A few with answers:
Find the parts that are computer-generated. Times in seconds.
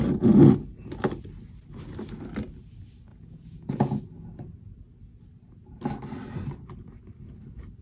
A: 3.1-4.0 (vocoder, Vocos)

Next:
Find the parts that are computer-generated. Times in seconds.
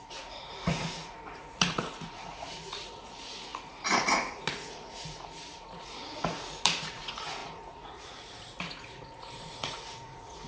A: 0.0-10.5 (vocoder, Vocos)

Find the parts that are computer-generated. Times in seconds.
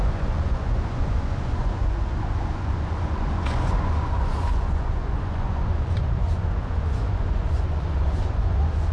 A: 0.0-8.9 (vocoder, Vocos)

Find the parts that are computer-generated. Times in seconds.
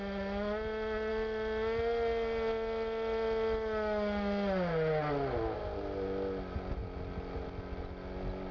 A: none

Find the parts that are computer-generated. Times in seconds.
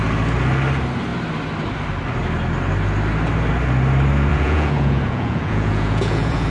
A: 4.3-6.5 (vocoder, Vocos)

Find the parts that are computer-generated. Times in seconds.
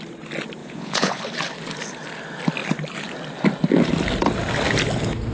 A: 0.6-1.2 (vocoder, Vocos)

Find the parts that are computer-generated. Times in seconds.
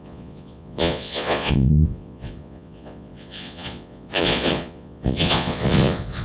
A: 0.0-6.2 (vocoder, Vocos)